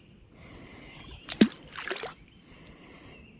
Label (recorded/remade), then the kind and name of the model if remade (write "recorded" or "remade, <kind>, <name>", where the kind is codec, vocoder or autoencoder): recorded